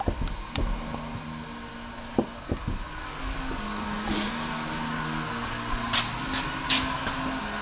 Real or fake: real